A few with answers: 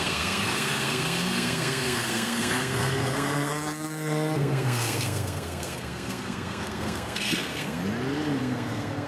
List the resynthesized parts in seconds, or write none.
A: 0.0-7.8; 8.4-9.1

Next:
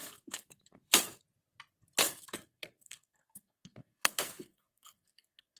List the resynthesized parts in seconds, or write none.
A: 0.0-1.2; 2.0-5.6

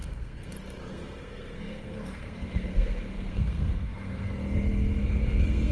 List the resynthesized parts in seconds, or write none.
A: 0.0-0.5; 0.9-4.3; 5.0-5.7